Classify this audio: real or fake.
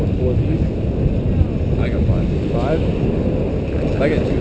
real